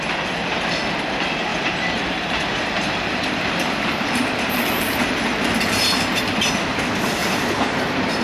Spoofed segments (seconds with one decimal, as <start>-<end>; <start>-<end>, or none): 1.5-6.2; 7.2-8.2